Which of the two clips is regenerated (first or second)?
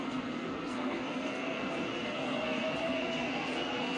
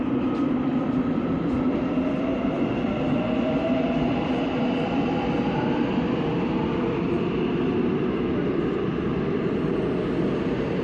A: first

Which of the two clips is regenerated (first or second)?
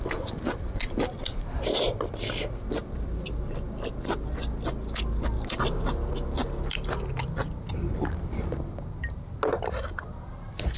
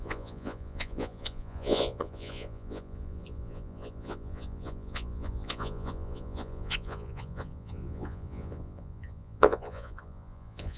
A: second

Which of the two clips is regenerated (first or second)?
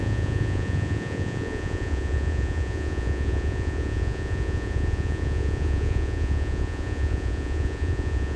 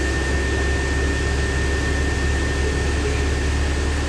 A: first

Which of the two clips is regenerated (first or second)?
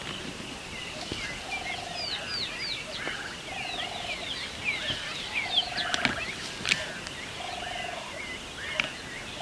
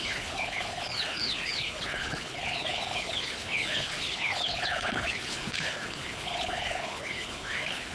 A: second